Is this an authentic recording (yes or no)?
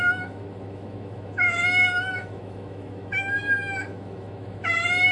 no